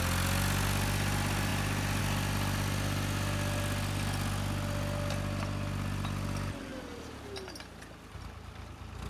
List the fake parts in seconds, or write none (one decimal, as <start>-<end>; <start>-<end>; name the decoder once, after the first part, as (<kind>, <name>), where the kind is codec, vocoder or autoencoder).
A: none